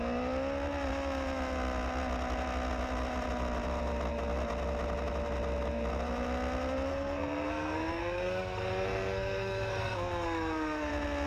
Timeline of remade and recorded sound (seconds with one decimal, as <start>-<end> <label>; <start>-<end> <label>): 0.0-6.9 recorded; 6.9-10.9 remade; 10.9-11.3 recorded